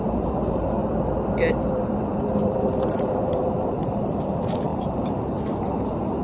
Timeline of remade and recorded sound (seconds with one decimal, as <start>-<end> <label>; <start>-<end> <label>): 0.0-0.8 remade; 0.8-1.5 recorded; 1.5-6.2 remade